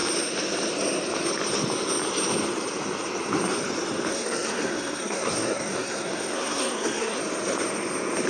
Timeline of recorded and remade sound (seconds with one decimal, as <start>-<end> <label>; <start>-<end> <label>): 0.0-4.1 recorded; 4.1-7.2 remade; 7.2-8.3 recorded